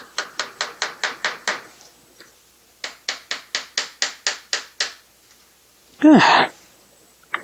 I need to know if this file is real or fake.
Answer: real